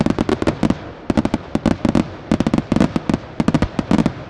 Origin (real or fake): real